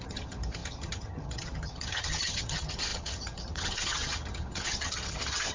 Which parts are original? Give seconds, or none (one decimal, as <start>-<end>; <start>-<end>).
none